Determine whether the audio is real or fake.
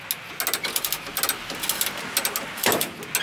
real